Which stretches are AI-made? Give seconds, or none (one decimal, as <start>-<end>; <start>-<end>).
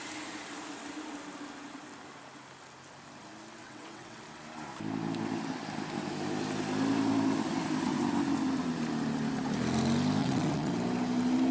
3.6-4.2; 10.2-10.7